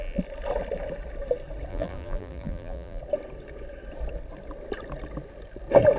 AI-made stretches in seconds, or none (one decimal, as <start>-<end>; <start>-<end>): 1.7-3.0